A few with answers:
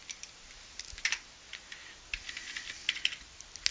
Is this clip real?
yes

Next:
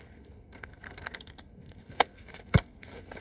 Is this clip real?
no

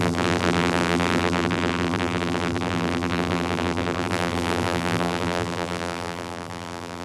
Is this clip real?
no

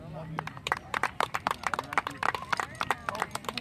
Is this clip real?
no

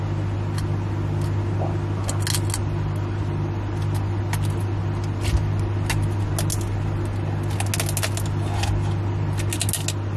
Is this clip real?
yes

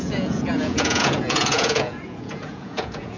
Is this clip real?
no